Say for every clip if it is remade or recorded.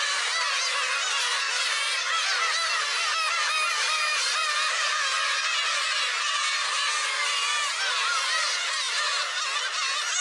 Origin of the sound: recorded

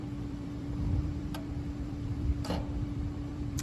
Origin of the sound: remade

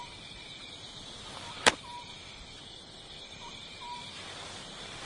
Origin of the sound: recorded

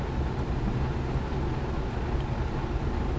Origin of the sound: recorded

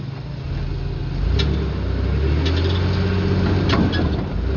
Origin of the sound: recorded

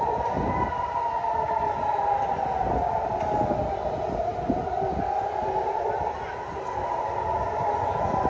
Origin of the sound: recorded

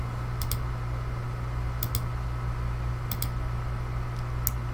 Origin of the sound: recorded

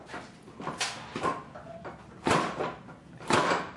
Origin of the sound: recorded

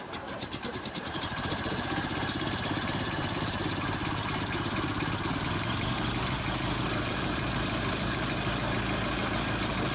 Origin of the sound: remade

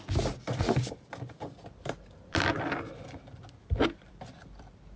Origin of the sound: remade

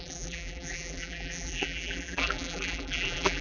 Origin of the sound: remade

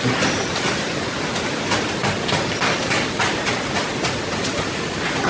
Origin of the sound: recorded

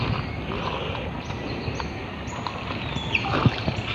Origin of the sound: recorded